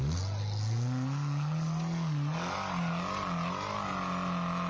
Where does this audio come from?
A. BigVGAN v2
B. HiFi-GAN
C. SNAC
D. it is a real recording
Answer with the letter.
D